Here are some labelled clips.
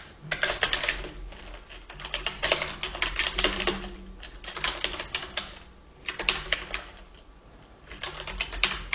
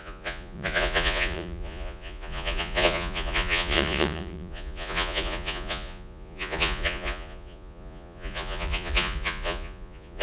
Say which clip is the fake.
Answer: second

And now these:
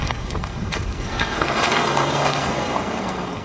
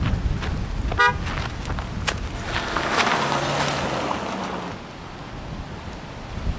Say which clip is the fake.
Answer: first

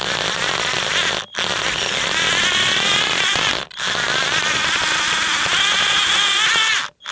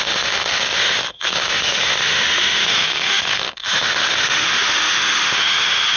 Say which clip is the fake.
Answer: second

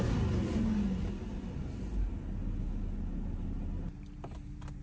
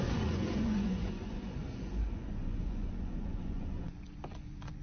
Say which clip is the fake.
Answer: second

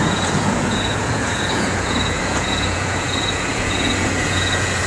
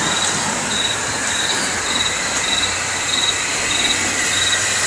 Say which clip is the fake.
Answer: first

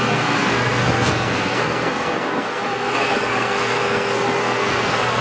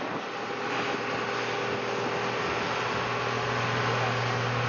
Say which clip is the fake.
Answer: first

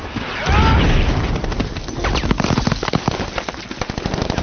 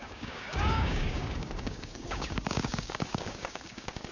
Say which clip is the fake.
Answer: second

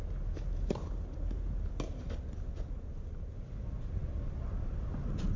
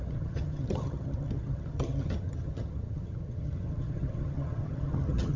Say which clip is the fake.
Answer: second